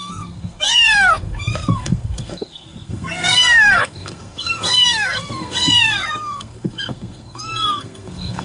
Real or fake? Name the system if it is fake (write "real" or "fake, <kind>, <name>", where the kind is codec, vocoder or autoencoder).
fake, codec, SNAC